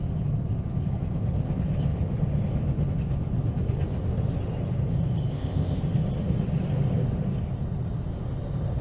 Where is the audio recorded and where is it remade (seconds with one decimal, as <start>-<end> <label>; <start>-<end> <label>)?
0.0-5.3 recorded; 5.3-5.8 remade; 5.8-8.8 recorded